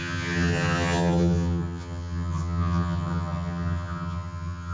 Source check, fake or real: fake